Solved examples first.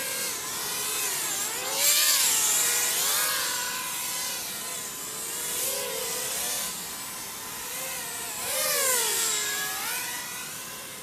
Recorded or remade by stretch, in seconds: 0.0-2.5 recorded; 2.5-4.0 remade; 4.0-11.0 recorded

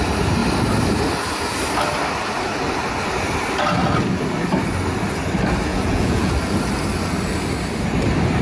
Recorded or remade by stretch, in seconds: 0.0-5.7 recorded; 5.7-6.3 remade; 6.3-8.4 recorded

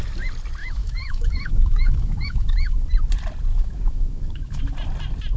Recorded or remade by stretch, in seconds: 0.0-0.6 recorded; 0.6-2.9 remade; 2.9-3.5 recorded; 3.5-4.6 remade; 4.6-5.4 recorded

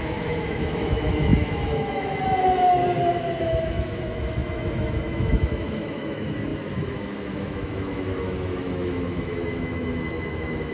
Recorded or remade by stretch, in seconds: 0.0-2.8 remade; 2.8-3.4 recorded; 3.4-10.7 remade

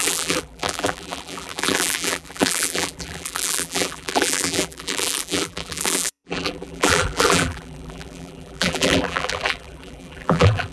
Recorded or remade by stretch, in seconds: 0.0-10.7 remade